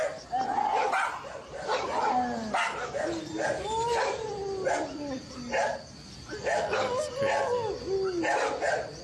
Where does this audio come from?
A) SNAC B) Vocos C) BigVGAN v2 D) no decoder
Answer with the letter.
D